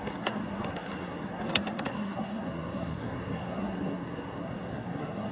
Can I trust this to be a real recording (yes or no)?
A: no